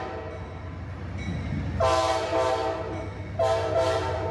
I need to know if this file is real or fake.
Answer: real